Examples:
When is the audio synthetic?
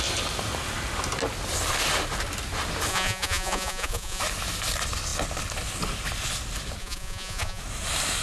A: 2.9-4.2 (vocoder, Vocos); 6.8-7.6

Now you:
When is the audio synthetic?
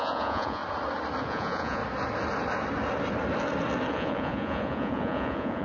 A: 0.0-0.6 (vocoder, Vocos); 1.2-1.8; 3.9-5.6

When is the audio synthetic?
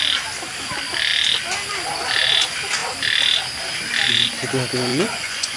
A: 4.9-5.6 (vocoder, Vocos)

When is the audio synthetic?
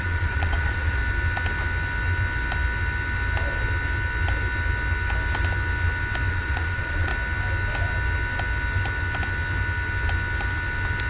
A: 0.0-1.0 (vocoder, Vocos); 6.3-7.1